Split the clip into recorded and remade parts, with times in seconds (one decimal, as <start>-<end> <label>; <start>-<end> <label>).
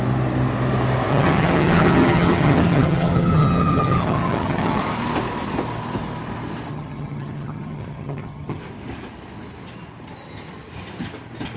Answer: 0.0-1.1 recorded; 1.1-4.8 remade; 4.8-6.7 recorded; 6.7-8.6 remade; 8.6-11.6 recorded